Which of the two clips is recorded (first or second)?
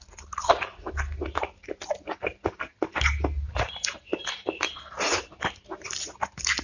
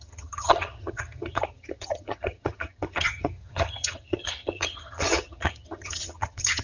first